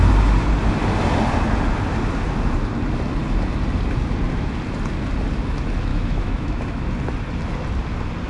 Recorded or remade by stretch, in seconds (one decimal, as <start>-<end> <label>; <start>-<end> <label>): 0.0-5.9 recorded; 5.9-6.9 remade; 6.9-8.3 recorded